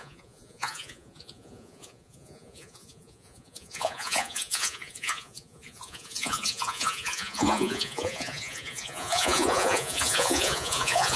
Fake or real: fake